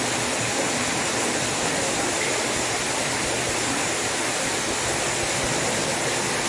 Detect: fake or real real